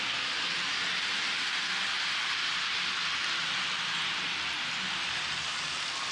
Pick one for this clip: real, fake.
real